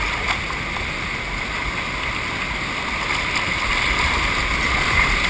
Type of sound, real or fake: real